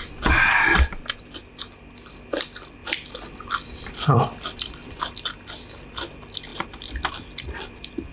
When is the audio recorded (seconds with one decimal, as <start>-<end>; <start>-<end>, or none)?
0.0-2.8; 5.2-8.1